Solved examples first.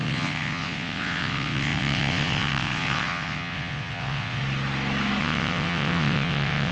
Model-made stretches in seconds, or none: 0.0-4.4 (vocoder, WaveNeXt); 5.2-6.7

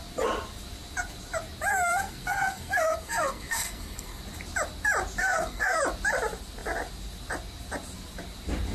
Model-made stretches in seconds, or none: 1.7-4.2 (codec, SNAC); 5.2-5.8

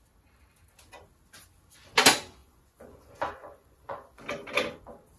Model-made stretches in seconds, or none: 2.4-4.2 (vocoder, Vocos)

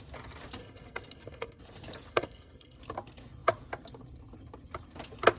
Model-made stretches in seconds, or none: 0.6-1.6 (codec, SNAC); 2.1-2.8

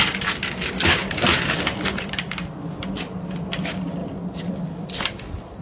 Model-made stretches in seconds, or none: 0.0-1.0 (vocoder, BigVGAN v2); 1.6-5.6